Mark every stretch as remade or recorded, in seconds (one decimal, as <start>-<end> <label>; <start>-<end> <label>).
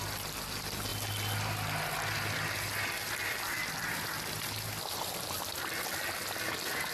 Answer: 0.0-6.9 recorded